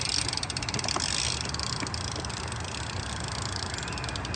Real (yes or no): yes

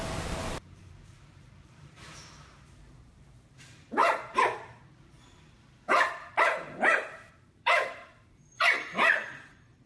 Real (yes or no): no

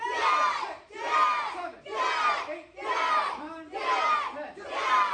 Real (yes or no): yes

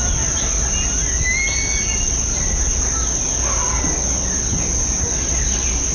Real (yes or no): yes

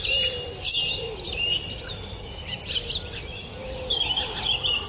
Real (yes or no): no